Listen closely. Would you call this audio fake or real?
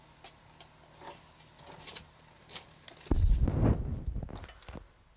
real